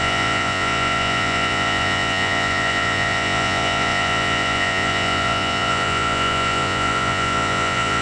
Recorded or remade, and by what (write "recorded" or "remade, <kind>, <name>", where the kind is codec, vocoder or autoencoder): remade, vocoder, Vocos